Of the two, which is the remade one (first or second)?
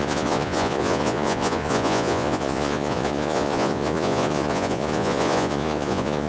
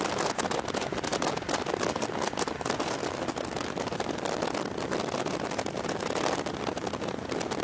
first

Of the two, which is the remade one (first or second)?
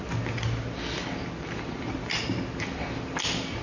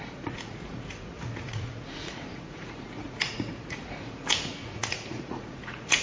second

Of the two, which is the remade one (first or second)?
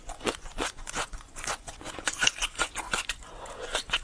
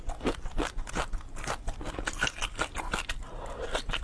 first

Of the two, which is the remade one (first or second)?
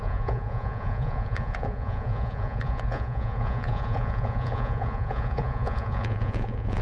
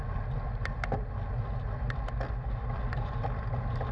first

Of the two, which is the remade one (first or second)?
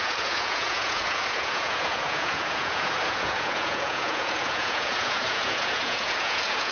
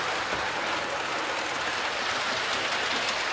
first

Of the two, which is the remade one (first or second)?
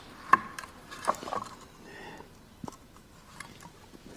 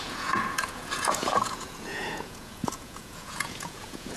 second